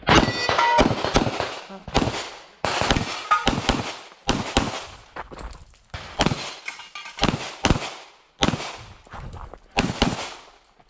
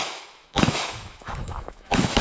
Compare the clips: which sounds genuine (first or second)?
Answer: first